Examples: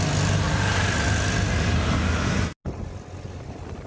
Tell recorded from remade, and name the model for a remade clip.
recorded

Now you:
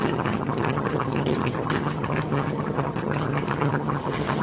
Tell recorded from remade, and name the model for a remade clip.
remade, vocoder, HiFi-GAN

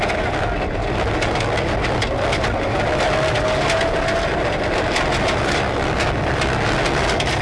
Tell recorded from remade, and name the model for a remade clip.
recorded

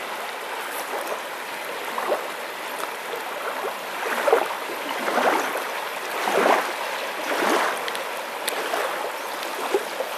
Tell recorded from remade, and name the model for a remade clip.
recorded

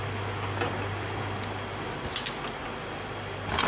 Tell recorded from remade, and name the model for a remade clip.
recorded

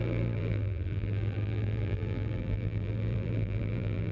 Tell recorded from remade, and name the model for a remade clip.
remade, vocoder, BigVGAN v2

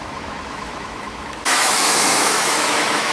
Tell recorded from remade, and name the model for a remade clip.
remade, autoencoder, DAC-VAE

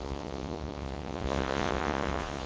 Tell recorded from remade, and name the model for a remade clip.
remade, vocoder, Vocos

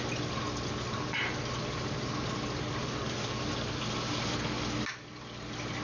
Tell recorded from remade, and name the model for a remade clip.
recorded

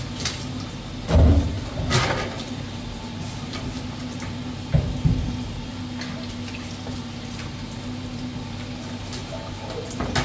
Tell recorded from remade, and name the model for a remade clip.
recorded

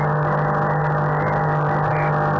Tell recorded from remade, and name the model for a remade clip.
recorded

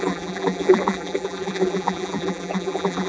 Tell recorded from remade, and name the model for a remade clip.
remade, vocoder, BigVGAN v2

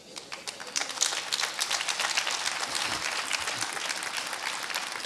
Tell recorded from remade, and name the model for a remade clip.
recorded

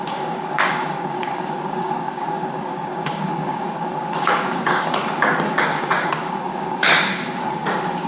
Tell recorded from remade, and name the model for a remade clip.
remade, codec, DAC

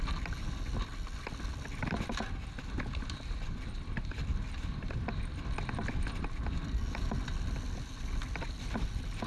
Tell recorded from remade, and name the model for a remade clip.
recorded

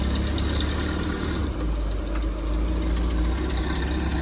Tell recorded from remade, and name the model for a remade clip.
recorded